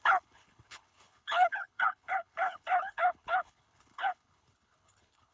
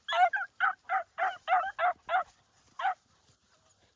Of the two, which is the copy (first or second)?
first